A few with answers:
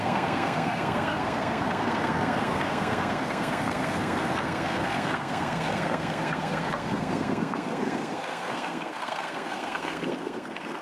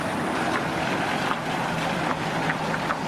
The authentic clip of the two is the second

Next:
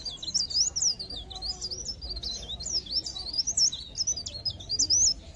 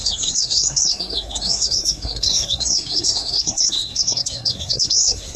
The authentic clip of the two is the first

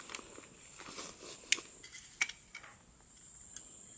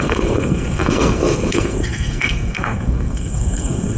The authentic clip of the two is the first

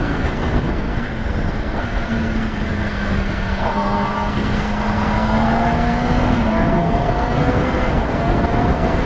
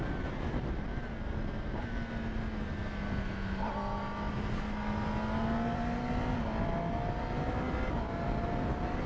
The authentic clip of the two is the second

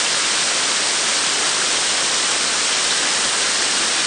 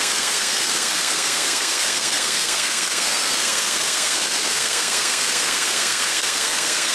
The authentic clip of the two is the first